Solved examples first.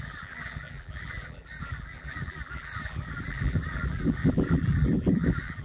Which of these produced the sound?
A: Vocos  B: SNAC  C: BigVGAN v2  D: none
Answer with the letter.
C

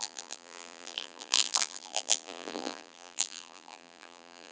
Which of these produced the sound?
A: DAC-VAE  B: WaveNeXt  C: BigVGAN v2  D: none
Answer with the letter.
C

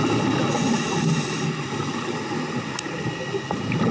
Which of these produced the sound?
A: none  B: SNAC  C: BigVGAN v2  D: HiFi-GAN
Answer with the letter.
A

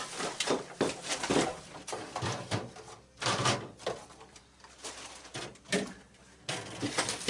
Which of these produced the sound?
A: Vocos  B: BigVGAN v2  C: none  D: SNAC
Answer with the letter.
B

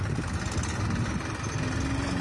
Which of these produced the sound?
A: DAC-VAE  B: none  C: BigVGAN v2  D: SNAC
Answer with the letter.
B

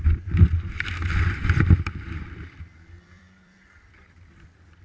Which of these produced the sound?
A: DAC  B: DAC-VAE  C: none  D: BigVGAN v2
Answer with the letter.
D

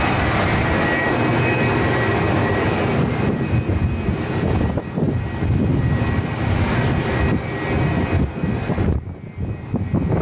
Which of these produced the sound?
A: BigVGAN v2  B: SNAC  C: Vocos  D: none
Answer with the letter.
D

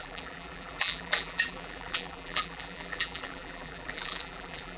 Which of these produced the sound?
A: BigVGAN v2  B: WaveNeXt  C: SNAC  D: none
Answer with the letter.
A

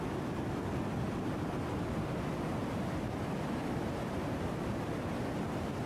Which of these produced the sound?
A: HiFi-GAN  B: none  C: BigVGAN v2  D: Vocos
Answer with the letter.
B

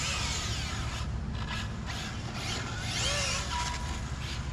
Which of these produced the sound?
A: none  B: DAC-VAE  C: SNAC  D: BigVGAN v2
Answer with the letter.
A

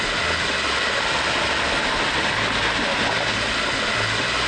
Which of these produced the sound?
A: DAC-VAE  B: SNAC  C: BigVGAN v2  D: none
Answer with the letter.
D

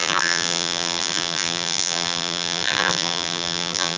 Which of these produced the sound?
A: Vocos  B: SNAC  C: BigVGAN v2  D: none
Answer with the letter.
C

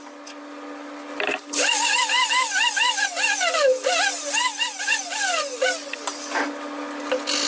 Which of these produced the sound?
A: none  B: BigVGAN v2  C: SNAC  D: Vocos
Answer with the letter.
A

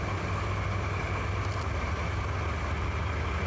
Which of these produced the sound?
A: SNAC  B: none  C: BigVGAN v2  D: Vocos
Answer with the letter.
B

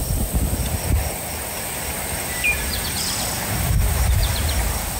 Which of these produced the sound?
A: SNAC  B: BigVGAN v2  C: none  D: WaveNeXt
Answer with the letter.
C